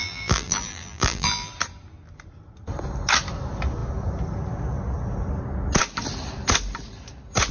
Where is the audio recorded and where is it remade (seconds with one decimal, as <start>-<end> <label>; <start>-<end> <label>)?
0.0-1.5 remade; 1.5-7.5 recorded